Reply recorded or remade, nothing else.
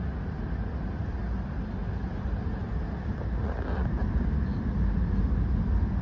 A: recorded